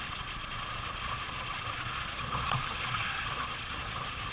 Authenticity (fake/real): fake